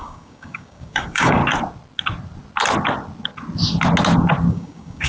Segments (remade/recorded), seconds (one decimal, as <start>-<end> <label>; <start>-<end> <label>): 0.0-1.4 remade; 1.4-4.5 recorded; 4.5-5.1 remade